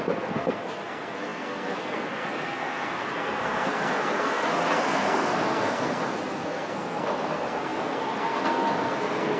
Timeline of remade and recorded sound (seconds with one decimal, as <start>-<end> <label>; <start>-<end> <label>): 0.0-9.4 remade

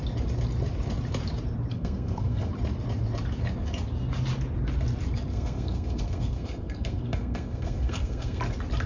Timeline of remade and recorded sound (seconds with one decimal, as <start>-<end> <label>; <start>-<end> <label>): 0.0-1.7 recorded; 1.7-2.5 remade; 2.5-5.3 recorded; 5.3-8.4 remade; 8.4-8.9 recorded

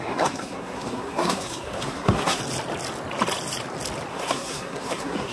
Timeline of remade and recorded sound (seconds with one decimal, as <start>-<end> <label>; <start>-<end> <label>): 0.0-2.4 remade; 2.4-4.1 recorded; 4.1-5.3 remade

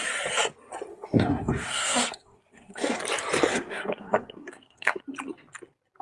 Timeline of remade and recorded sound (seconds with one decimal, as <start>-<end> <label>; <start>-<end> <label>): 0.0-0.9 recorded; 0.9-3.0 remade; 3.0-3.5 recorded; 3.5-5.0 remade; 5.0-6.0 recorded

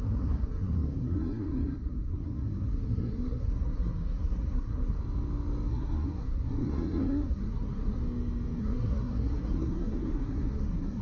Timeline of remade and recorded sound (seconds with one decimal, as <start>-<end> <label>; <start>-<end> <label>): 0.0-5.0 remade; 5.0-5.7 recorded; 5.7-8.0 remade; 8.0-8.6 recorded; 8.6-11.0 remade

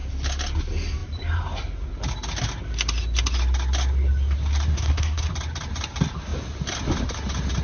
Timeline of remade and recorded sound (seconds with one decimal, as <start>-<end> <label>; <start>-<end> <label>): 0.0-4.7 recorded; 4.7-5.3 remade; 5.3-7.6 recorded

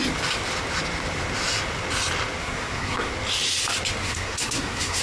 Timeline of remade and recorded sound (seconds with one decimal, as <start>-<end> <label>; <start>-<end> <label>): 0.0-2.4 recorded; 2.4-3.1 remade; 3.1-4.0 recorded; 4.0-5.0 remade

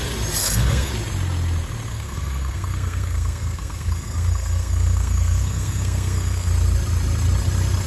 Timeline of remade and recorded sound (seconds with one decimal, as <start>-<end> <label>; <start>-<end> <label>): 0.0-0.4 recorded; 0.4-0.9 remade; 0.9-1.9 recorded; 1.9-6.5 remade; 6.5-7.9 recorded